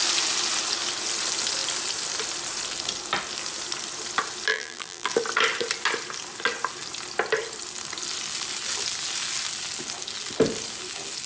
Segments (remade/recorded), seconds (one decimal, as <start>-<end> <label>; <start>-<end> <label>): 0.0-4.5 recorded; 4.5-5.1 remade; 5.1-11.3 recorded